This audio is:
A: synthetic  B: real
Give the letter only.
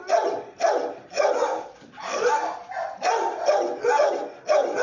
B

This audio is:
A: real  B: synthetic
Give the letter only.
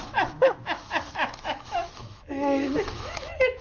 B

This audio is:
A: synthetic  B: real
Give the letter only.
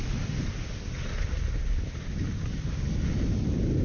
B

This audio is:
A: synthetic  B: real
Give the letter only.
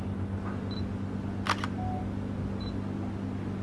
B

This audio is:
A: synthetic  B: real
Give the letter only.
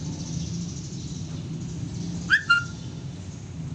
B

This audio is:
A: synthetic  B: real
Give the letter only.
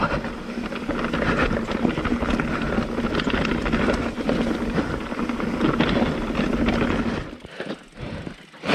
B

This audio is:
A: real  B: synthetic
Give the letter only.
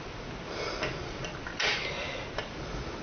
A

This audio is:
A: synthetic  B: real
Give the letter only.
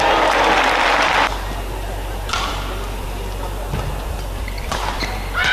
B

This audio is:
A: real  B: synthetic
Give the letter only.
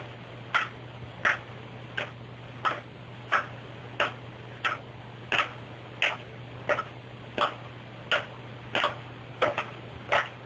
A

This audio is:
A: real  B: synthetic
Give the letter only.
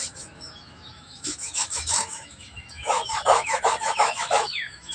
B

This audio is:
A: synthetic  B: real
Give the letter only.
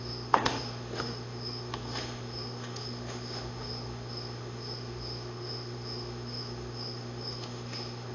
A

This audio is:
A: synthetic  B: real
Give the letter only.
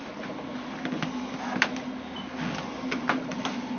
B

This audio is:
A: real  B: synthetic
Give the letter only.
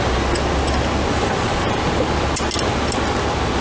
A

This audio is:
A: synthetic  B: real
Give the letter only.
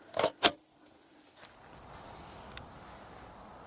B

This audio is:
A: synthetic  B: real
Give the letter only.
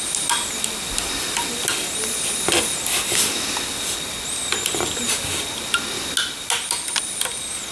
B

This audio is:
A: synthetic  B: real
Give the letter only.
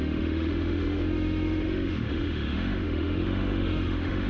A